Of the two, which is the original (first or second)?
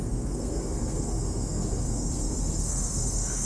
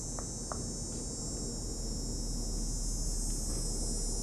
second